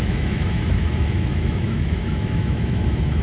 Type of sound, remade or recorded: remade